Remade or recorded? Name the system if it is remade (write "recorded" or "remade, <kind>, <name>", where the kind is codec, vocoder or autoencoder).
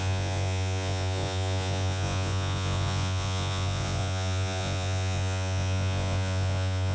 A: remade, vocoder, Vocos